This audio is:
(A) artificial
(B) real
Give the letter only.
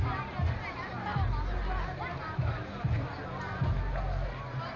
B